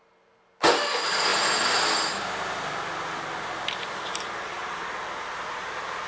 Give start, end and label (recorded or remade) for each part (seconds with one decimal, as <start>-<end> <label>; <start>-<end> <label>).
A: 0.0-4.6 remade; 4.6-5.2 recorded; 5.2-6.1 remade